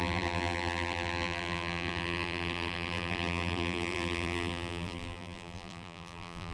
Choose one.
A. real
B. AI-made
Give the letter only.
B